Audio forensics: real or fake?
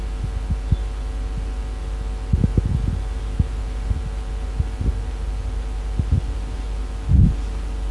real